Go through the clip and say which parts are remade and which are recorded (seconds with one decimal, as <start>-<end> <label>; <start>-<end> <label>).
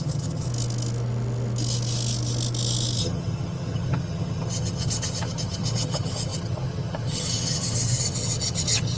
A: 0.0-0.5 remade; 0.5-3.0 recorded; 3.0-9.0 remade